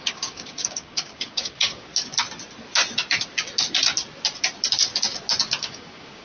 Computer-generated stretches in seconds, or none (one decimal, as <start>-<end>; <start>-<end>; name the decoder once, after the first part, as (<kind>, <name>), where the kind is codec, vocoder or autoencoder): 0.0-1.9 (codec, DAC); 5.6-6.2